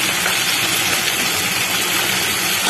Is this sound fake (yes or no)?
yes